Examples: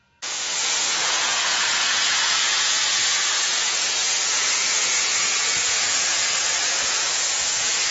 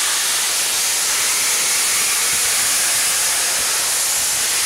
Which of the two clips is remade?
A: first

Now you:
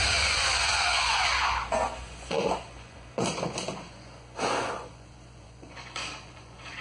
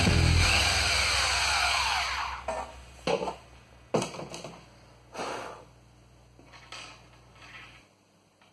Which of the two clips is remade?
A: first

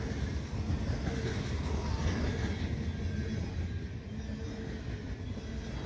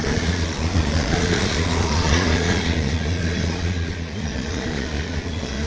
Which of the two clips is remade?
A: second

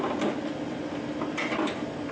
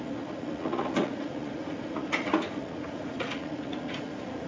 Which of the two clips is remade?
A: second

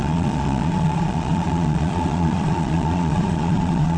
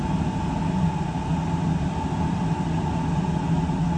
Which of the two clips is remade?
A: first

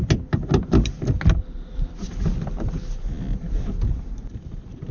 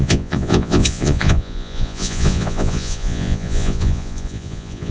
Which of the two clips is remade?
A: second